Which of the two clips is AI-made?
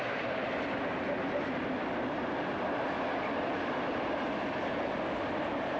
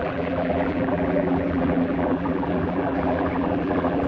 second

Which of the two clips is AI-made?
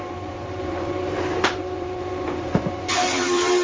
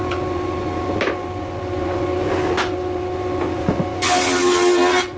first